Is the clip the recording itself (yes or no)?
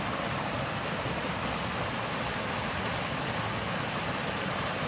yes